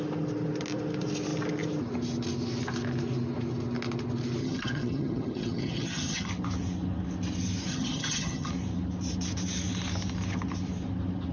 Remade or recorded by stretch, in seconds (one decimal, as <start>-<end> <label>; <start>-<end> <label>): 0.0-4.4 recorded; 4.4-6.3 remade; 6.3-7.7 recorded; 7.7-8.5 remade; 8.5-11.3 recorded